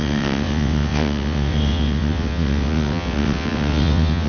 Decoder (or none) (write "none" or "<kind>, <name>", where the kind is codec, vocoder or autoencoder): vocoder, WaveNeXt